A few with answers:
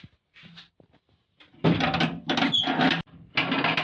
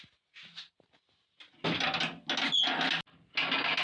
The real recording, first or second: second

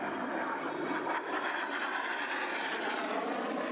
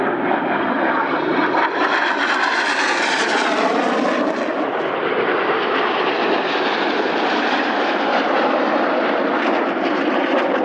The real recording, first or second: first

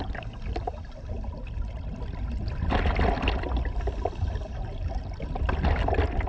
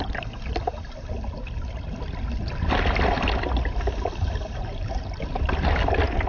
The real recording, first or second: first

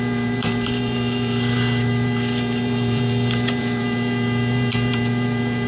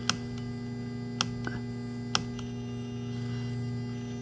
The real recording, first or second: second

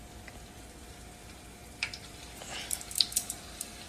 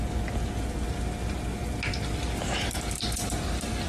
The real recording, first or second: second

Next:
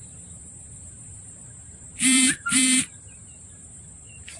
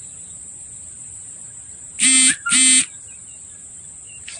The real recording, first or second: second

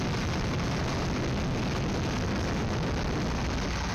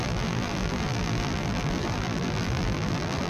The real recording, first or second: first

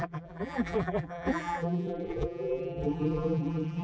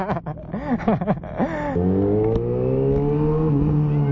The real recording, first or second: second